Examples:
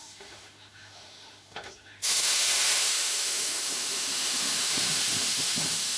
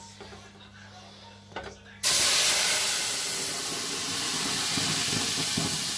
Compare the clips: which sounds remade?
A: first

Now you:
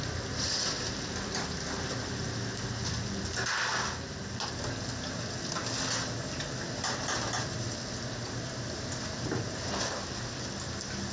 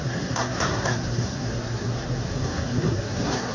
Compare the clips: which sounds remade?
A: second